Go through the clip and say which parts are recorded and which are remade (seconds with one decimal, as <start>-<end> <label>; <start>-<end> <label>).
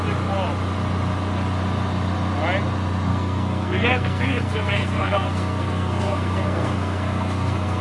0.0-3.1 recorded; 3.1-7.8 remade